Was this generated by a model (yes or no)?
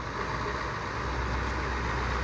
no